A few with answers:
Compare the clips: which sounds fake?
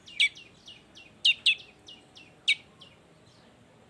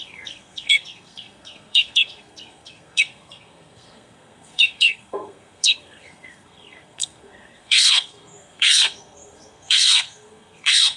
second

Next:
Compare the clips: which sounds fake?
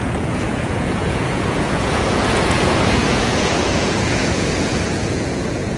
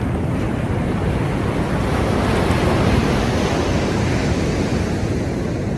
first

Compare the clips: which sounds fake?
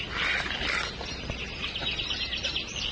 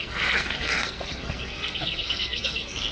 second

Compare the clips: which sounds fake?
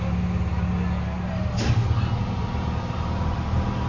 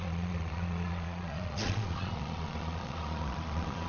second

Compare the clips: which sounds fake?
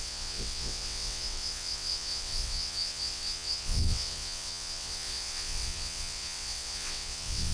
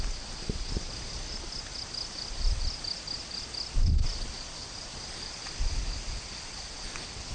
first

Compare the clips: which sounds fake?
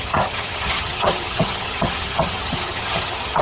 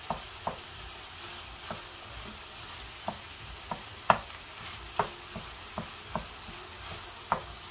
first